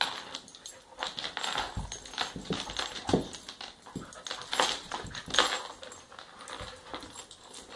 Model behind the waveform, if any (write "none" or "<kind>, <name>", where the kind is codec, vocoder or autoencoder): none